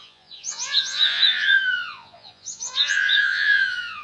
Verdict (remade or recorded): remade